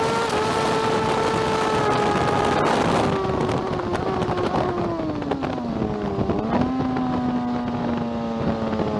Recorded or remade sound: recorded